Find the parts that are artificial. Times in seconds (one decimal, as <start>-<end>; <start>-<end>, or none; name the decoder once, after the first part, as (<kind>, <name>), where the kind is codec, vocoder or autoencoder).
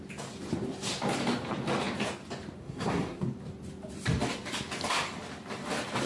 2.6-3.2 (codec, SNAC)